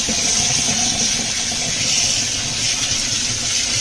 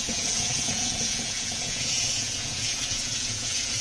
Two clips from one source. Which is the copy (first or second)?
second